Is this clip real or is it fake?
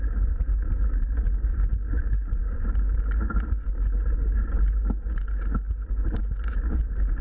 real